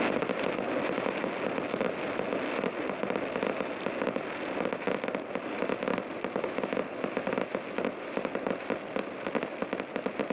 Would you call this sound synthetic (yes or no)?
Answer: no